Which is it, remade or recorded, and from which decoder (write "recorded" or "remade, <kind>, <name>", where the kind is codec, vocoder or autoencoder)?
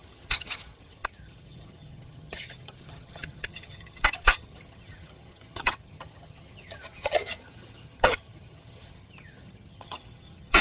remade, vocoder, HiFi-GAN